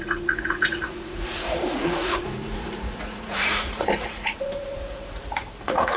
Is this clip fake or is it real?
fake